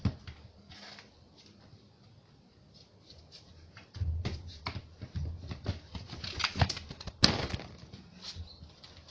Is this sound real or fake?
real